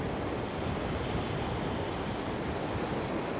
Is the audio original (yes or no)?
yes